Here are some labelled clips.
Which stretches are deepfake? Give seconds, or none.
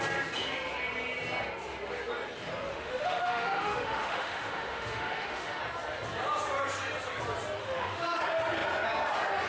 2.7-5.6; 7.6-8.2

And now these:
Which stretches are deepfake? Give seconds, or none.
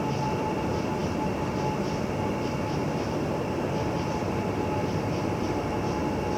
none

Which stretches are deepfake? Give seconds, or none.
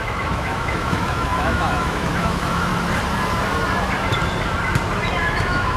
0.0-2.7; 5.2-5.8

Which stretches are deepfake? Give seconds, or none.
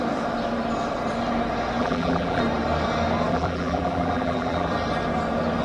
1.8-2.4; 3.3-4.7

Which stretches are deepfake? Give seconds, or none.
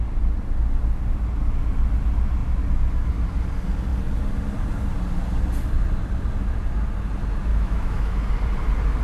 7.5-8.3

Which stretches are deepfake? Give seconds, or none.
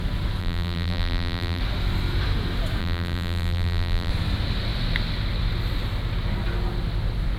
0.4-1.6; 2.8-4.1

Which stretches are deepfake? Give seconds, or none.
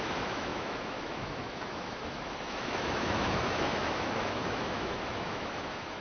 0.0-6.0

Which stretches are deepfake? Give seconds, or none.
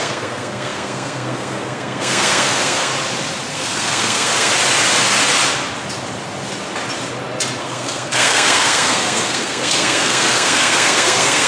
0.0-2.9; 3.5-4.5; 7.6-11.5